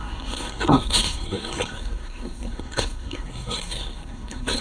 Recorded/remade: remade